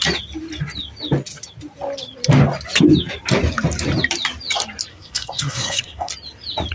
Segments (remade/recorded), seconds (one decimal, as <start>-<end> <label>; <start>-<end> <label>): 0.0-4.9 recorded; 4.9-6.1 remade; 6.1-6.7 recorded